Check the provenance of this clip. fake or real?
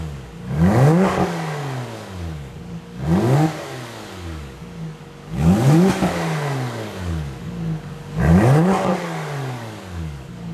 fake